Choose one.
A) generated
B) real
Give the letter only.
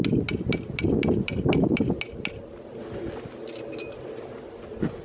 B